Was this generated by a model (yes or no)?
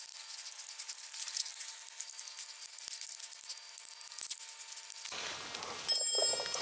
no